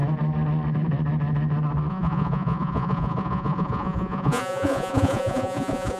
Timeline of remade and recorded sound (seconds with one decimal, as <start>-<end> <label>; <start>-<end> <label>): 0.0-1.9 recorded; 1.9-6.0 remade